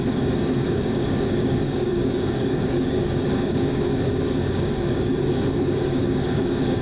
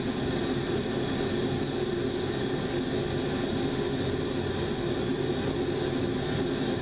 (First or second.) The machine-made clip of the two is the first